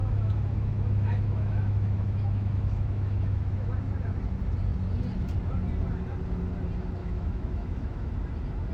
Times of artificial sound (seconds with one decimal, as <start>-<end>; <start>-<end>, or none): 0.0-3.7; 7.0-8.1